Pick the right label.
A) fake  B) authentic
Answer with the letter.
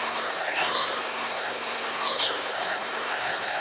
A